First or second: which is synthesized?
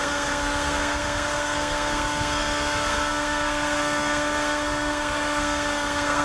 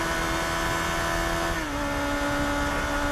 first